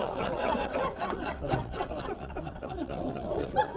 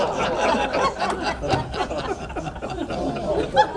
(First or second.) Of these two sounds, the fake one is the first